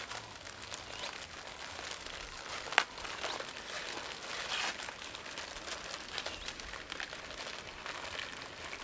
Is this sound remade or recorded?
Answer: recorded